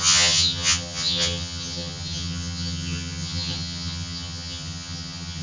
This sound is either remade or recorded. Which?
remade